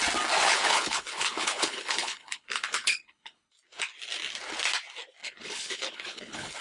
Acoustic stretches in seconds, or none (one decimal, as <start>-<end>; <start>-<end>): 0.0-0.4; 3.5-5.2